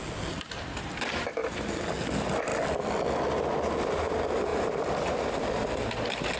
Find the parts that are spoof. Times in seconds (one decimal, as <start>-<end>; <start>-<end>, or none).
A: 4.5-5.3